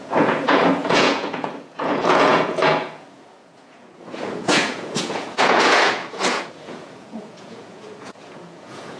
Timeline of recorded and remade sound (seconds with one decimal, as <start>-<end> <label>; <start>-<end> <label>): 0.0-9.0 remade

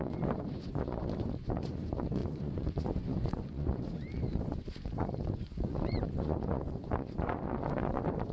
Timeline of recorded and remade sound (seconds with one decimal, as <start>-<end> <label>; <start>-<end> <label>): 0.0-8.3 remade

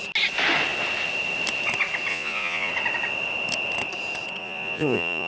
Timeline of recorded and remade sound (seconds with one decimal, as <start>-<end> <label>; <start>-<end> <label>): 0.0-2.1 recorded; 2.1-2.7 remade; 2.7-4.4 recorded; 4.4-5.3 remade

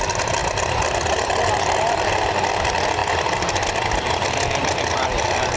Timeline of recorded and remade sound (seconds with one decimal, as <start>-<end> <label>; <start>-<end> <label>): 0.0-5.6 recorded

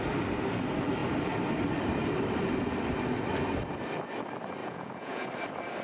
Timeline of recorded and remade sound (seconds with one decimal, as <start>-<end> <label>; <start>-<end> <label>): 0.0-4.6 recorded; 4.6-5.3 remade; 5.3-5.8 recorded

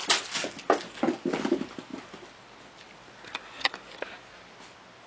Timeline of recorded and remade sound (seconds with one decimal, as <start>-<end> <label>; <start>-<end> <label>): 0.0-5.1 recorded

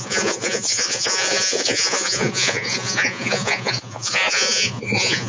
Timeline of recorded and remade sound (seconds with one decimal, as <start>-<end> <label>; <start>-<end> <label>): 0.0-5.3 remade

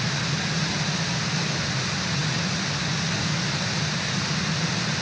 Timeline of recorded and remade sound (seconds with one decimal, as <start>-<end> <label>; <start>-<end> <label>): 0.0-5.0 recorded